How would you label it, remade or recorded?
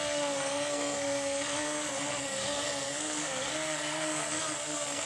remade